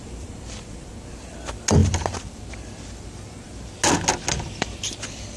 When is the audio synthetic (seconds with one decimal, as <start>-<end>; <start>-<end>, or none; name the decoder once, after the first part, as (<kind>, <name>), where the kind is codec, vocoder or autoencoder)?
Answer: none